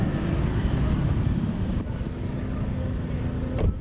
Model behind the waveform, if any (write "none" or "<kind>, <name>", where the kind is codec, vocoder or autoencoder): none